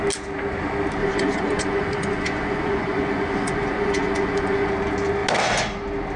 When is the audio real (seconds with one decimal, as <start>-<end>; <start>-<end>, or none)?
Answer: 0.0-1.0; 4.7-6.2